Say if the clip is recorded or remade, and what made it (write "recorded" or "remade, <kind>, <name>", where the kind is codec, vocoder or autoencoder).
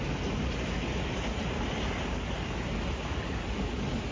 recorded